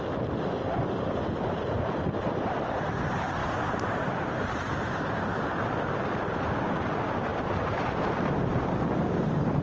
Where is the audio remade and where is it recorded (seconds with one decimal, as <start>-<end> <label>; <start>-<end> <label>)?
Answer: 0.0-3.4 recorded; 3.4-5.4 remade; 5.4-7.3 recorded; 7.3-7.9 remade; 7.9-9.6 recorded